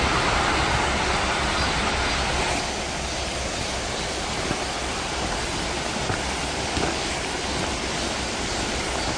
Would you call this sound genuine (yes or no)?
yes